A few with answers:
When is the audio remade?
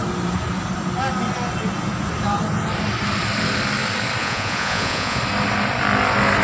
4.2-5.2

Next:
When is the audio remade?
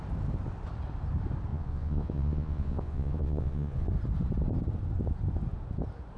1.5-3.9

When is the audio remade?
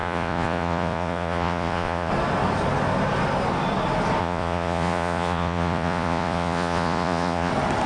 0.0-2.1; 4.2-7.5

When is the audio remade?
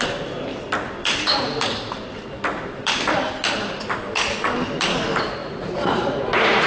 5.4-6.7